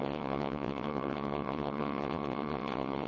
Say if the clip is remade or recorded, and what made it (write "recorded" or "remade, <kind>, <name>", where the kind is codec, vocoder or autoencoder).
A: remade, vocoder, WaveNeXt